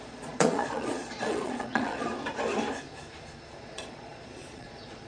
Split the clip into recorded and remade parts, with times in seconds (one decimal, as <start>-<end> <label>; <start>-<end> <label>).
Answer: 0.0-2.1 remade; 2.1-3.6 recorded; 3.6-5.1 remade